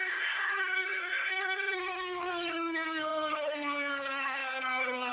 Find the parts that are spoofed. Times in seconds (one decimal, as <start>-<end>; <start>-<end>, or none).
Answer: 0.0-5.1